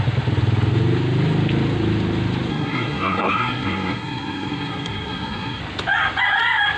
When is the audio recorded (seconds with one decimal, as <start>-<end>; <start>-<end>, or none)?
0.0-2.5; 5.6-6.8